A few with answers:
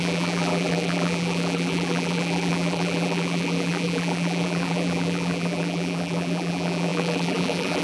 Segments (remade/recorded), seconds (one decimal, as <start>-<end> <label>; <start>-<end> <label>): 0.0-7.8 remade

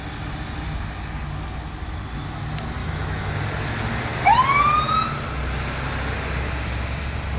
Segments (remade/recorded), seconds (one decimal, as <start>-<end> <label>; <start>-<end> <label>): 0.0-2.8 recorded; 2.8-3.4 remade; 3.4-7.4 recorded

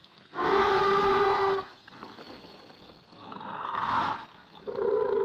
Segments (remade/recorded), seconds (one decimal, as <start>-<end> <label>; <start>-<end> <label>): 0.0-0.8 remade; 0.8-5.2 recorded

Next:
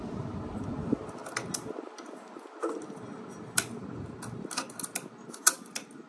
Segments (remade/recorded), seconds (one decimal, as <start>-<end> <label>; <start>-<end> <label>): 0.0-6.1 recorded